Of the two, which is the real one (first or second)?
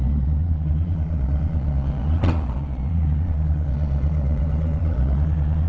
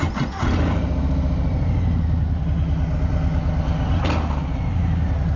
second